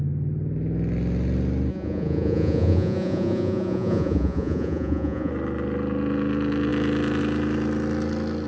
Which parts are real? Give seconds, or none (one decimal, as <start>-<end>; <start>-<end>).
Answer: 0.0-1.7; 5.3-8.5